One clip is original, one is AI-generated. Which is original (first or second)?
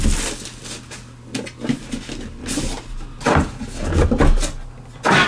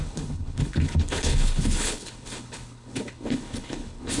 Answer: first